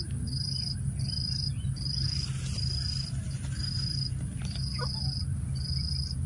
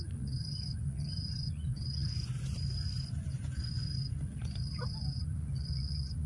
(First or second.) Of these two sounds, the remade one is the second